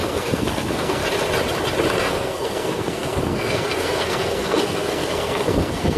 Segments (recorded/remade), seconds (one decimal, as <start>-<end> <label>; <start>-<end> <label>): 0.0-1.0 remade; 1.0-1.9 recorded; 1.9-6.0 remade